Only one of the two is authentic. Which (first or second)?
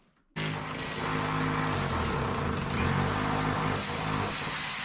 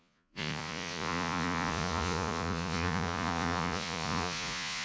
first